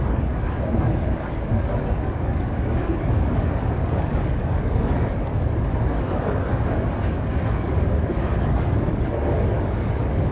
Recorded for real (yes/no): no